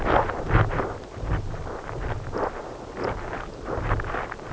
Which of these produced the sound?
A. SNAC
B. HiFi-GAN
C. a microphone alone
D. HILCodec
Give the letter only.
C